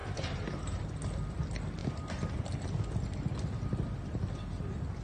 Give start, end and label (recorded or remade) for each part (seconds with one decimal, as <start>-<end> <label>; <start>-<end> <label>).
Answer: 0.0-0.9 remade; 0.9-5.0 recorded

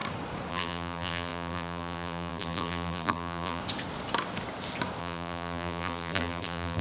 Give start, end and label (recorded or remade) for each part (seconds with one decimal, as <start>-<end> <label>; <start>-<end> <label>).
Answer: 0.0-0.5 recorded; 0.5-3.6 remade; 3.6-5.0 recorded; 5.0-6.8 remade

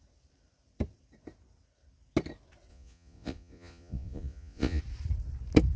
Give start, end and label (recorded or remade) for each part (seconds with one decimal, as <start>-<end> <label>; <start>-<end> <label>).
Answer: 0.0-2.7 recorded; 2.7-4.8 remade; 4.8-5.8 recorded

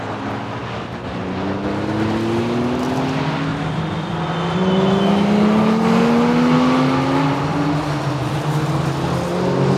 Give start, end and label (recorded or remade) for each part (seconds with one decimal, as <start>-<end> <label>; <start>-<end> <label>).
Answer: 0.0-3.5 recorded; 3.5-4.1 remade; 4.1-9.8 recorded

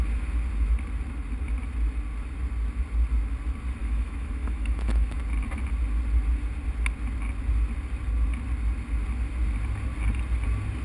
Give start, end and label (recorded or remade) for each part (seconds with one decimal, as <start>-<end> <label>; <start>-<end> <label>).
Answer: 0.0-3.8 recorded; 3.8-5.2 remade; 5.2-10.8 recorded